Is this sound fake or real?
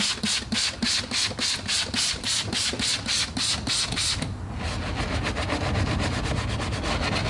real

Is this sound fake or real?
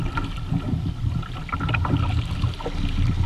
real